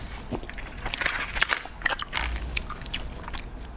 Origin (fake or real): real